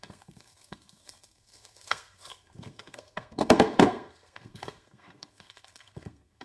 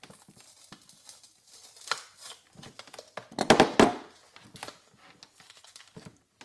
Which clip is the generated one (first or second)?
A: first